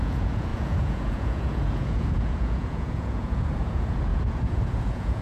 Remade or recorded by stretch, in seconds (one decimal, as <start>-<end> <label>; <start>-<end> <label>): 0.0-5.2 remade